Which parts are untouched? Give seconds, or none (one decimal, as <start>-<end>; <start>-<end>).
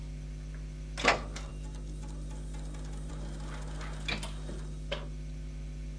0.0-6.0